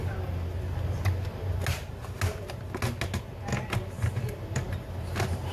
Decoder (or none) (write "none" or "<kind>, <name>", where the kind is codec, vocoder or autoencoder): none